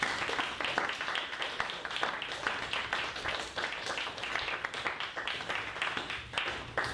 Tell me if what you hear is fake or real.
real